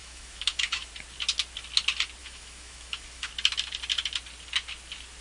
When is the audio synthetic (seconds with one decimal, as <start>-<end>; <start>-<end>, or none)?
0.0-0.9; 2.2-3.3